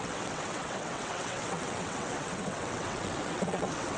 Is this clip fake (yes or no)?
yes